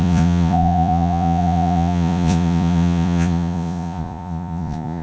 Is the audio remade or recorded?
remade